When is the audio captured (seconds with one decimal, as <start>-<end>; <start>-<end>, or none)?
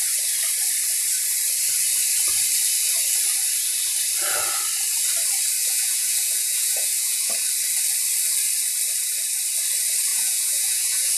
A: 0.0-5.6; 7.3-10.1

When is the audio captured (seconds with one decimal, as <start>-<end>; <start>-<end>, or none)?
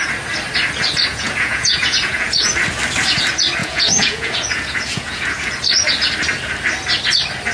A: 0.0-1.1; 2.5-3.6; 5.5-7.5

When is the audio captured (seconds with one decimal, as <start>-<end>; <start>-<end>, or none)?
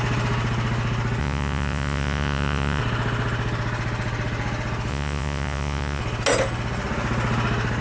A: 0.0-1.2; 2.8-4.9; 6.0-7.8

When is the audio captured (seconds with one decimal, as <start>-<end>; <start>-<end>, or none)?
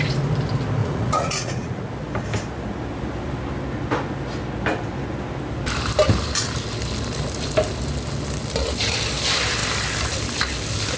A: 0.0-0.8; 1.8-11.0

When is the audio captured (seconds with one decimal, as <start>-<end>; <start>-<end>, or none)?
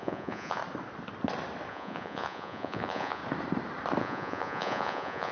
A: 0.6-1.7; 3.2-4.0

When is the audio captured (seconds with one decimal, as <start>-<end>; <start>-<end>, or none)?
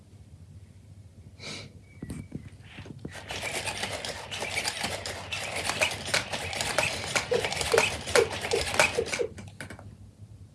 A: 0.0-10.5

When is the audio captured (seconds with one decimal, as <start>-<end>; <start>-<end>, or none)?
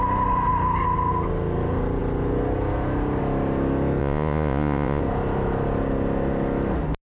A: 0.0-4.0; 5.0-7.1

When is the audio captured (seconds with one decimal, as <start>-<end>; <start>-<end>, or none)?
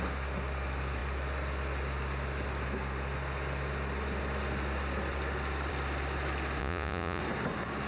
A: 0.0-6.6; 7.2-7.9